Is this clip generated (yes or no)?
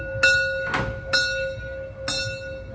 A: no